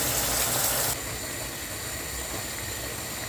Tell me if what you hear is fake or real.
real